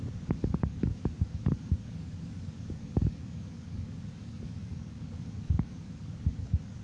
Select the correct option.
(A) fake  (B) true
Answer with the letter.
A